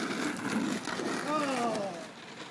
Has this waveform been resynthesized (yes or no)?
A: no